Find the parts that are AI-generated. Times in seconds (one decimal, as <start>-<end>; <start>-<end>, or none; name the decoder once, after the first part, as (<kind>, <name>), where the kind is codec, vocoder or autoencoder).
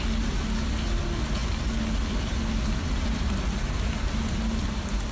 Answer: none